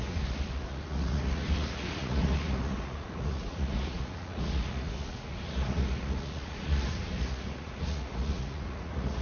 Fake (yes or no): yes